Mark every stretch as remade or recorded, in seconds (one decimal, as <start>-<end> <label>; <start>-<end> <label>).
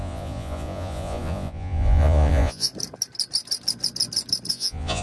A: 0.0-2.7 remade; 2.7-4.5 recorded; 4.5-5.0 remade